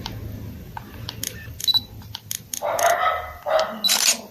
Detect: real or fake real